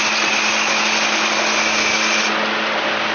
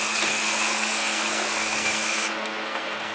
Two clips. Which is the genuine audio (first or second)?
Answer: first